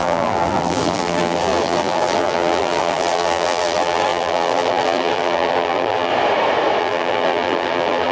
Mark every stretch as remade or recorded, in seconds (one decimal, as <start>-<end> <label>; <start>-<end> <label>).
0.0-6.1 remade; 6.1-6.8 recorded; 6.8-8.1 remade